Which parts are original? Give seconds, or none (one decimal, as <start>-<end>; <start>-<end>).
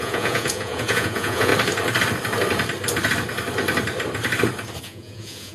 1.5-4.8